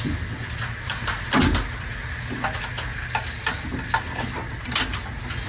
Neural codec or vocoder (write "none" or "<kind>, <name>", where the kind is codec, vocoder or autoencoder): none